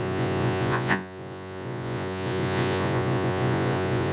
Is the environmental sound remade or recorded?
remade